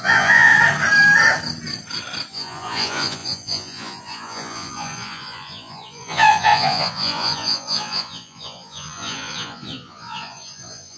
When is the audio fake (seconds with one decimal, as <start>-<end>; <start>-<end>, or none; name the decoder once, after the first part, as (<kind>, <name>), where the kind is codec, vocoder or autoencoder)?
0.0-0.5 (vocoder, Vocos); 2.3-11.0